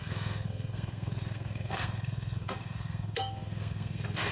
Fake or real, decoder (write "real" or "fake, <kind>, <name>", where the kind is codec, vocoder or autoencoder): fake, codec, SNAC